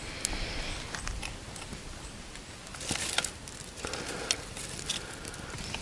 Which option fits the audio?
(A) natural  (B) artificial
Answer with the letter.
A